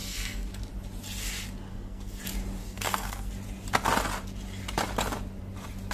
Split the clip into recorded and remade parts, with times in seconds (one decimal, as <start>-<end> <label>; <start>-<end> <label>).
0.0-0.6 remade; 0.6-1.7 recorded; 1.7-2.2 remade; 2.2-2.6 recorded; 2.6-3.3 remade; 3.3-5.9 recorded